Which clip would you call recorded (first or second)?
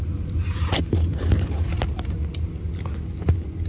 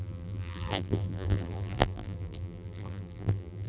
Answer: first